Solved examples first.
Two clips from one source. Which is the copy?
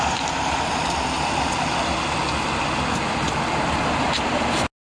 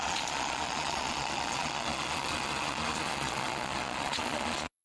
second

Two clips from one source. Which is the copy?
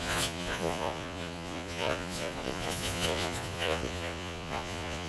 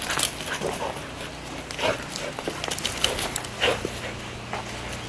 first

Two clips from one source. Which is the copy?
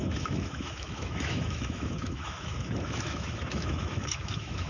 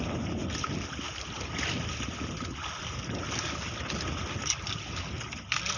first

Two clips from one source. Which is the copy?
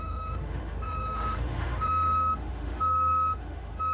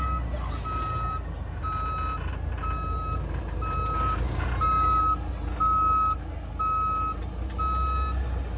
first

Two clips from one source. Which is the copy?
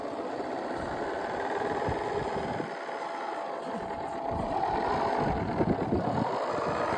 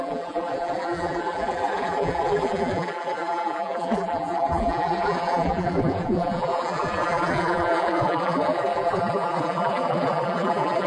second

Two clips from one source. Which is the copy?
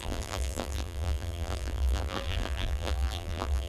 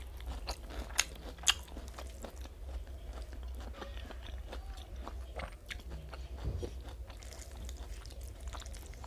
first